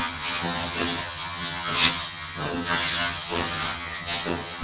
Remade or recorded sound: remade